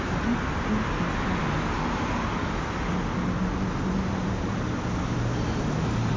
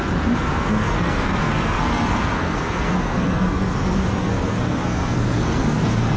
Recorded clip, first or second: first